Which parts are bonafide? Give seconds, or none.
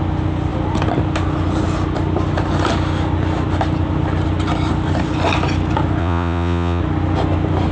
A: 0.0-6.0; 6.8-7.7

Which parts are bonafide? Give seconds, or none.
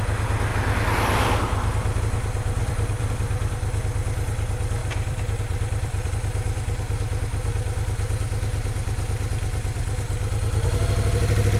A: 0.0-2.6; 3.1-4.8; 6.1-11.6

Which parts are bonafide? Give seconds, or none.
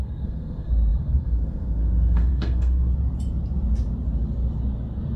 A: 2.9-5.2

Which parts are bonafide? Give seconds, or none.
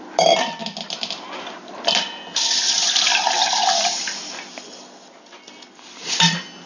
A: 0.0-6.7